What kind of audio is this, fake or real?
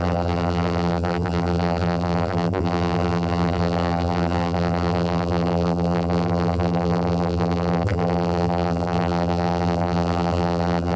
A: fake